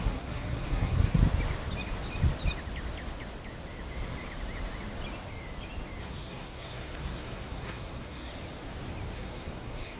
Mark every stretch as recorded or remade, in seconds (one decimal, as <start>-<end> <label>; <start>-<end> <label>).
0.0-1.2 remade; 1.2-6.0 recorded; 6.0-8.3 remade; 8.3-9.1 recorded; 9.1-10.0 remade